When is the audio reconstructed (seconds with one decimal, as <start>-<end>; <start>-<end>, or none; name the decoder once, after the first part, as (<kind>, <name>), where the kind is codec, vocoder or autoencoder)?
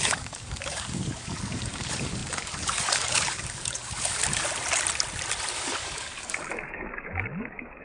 0.0-4.2 (codec, DAC); 5.5-7.8